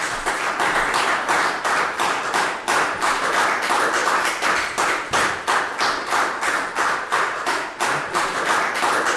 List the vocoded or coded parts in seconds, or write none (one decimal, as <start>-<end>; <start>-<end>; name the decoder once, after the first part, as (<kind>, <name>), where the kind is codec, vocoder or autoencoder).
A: none